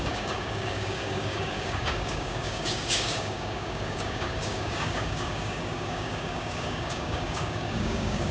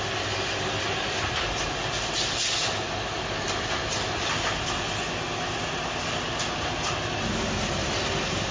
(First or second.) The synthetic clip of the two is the first